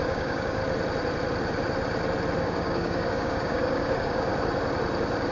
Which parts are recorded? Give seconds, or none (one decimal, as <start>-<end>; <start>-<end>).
0.6-2.4; 4.3-5.3